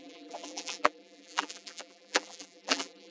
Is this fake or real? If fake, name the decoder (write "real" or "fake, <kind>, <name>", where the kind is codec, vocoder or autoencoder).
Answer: fake, vocoder, BigVGAN v2